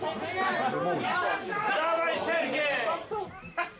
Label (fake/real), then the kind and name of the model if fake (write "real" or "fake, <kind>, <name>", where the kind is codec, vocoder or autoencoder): real